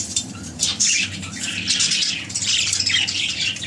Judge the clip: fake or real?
fake